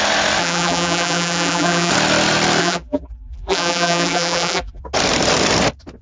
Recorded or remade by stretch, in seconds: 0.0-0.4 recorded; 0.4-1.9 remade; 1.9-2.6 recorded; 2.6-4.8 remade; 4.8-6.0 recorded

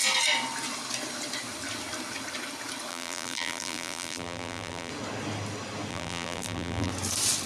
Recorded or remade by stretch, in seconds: 0.0-2.9 recorded; 2.9-4.9 remade; 4.9-5.9 recorded; 5.9-6.9 remade; 6.9-7.5 recorded

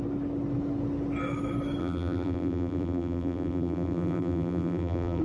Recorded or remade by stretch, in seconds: 0.0-1.8 recorded; 1.8-5.2 remade

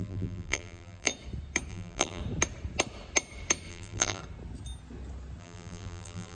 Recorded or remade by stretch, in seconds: 0.0-1.1 remade; 1.1-1.7 recorded; 1.7-2.2 remade; 2.2-3.7 recorded; 3.7-4.2 remade; 4.2-5.4 recorded; 5.4-6.3 remade

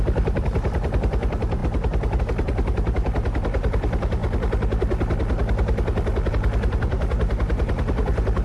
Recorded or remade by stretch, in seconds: 0.0-4.2 remade; 4.2-6.3 recorded; 6.3-8.4 remade

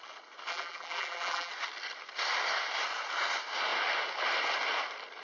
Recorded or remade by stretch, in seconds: 0.0-0.5 recorded; 0.5-1.5 remade; 1.5-5.2 recorded

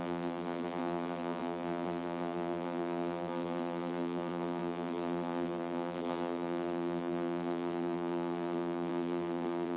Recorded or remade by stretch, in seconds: 0.0-9.8 remade